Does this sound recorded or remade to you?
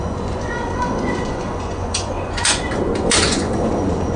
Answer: remade